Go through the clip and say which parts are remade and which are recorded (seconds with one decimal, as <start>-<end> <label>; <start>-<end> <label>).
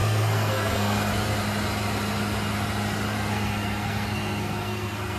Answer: 0.0-1.1 remade; 1.1-3.3 recorded; 3.3-5.2 remade